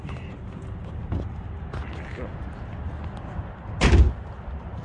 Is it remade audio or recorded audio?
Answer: recorded